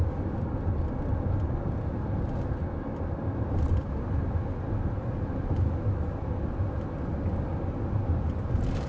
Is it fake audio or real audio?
real